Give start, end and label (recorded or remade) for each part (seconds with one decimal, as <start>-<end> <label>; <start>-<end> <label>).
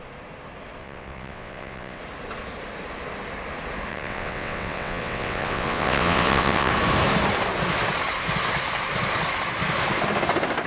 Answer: 0.0-0.8 recorded; 0.8-2.0 remade; 2.0-3.9 recorded; 3.9-6.7 remade; 6.7-10.7 recorded